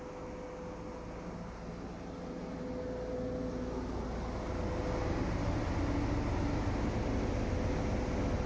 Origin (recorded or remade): recorded